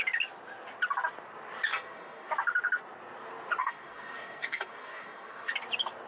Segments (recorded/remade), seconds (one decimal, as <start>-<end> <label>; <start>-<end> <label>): 0.0-1.7 recorded; 1.7-2.3 remade; 2.3-3.6 recorded; 3.6-5.5 remade; 5.5-6.1 recorded